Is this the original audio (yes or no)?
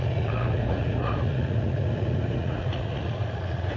no